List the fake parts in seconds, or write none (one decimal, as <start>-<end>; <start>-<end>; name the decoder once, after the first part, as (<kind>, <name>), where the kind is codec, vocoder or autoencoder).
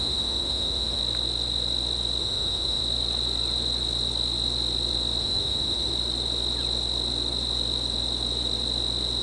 0.0-1.0 (autoencoder, DAC-VAE); 2.2-2.8; 5.2-5.9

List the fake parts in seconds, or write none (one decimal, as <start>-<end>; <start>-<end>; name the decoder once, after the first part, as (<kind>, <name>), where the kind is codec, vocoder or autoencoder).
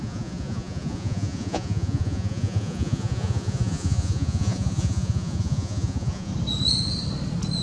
0.0-6.3 (vocoder, Vocos)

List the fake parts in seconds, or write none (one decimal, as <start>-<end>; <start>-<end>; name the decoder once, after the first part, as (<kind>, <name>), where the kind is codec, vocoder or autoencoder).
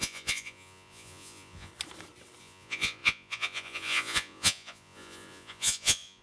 0.0-1.7 (vocoder, Vocos); 2.4-6.2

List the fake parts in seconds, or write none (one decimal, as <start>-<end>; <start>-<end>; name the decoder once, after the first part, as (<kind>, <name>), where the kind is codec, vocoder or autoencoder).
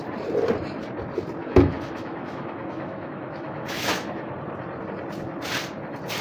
1.4-4.3 (autoencoder, DAC-VAE)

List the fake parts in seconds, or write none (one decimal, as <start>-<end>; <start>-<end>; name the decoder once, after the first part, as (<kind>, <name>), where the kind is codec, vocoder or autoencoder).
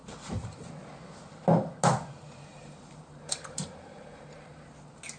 0.0-0.7 (vocoder, BigVGAN v2); 2.5-4.7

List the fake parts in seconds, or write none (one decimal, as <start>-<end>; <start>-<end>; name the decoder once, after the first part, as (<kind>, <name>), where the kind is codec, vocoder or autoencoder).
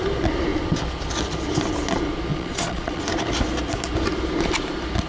2.3-3.0 (vocoder, Vocos)